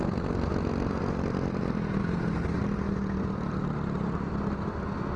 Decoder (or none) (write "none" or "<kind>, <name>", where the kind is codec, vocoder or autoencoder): none